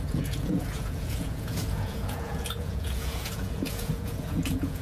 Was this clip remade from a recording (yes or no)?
yes